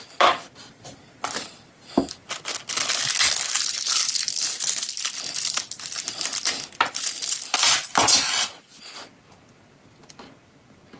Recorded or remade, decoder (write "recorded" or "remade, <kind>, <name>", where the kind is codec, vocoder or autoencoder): recorded